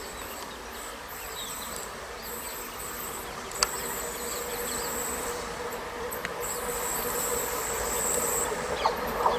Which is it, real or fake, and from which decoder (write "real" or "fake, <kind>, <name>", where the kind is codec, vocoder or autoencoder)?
real